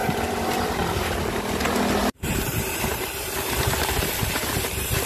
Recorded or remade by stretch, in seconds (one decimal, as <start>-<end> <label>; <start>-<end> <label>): 0.0-0.8 remade; 0.8-2.0 recorded; 2.0-5.1 remade